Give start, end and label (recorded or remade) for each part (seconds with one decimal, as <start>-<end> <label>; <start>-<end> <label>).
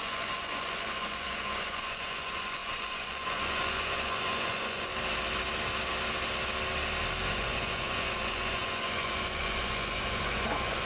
0.0-4.9 remade; 4.9-7.3 recorded; 7.3-10.9 remade